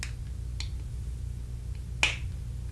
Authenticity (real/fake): real